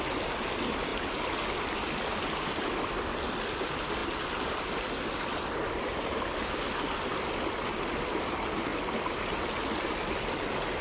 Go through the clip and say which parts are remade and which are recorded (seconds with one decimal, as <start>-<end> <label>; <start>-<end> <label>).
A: 0.0-10.8 recorded